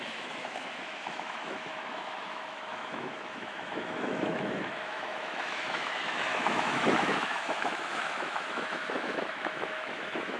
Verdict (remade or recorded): remade